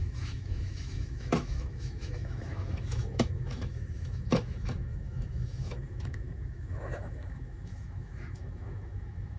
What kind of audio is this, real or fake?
fake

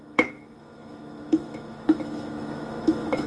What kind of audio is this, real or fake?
fake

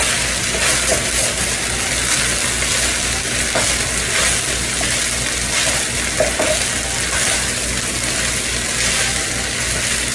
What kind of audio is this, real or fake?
real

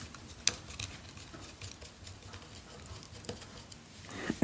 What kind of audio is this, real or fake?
real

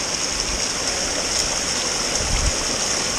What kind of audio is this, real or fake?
real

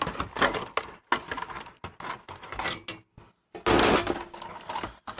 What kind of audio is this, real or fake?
real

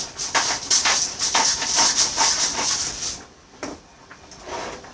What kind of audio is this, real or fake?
real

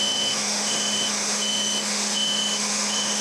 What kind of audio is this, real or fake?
fake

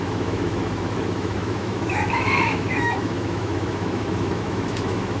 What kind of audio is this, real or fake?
fake